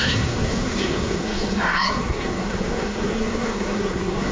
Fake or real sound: fake